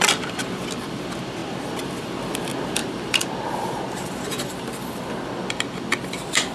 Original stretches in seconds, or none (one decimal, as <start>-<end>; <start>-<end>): none